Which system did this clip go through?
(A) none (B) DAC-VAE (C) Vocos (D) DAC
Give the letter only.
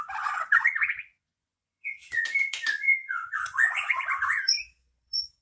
C